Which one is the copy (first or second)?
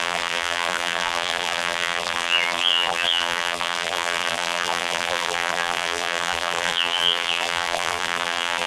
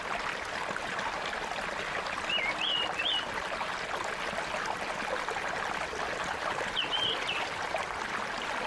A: first